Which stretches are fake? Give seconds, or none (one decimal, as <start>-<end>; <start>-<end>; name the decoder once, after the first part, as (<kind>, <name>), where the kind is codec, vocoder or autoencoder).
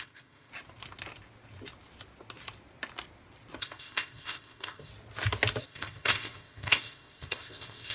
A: 0.0-0.5 (codec, ZipCodec); 3.6-4.9; 5.6-7.9